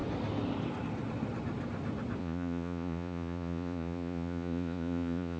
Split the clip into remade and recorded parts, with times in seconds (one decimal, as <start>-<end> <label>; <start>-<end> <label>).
0.0-2.2 recorded; 2.2-5.4 remade